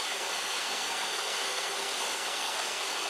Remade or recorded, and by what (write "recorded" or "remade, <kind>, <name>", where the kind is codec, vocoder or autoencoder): remade, codec, SNAC